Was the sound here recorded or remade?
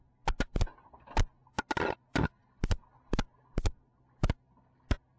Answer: recorded